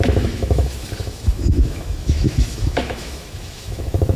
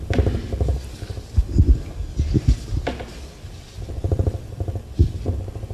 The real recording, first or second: second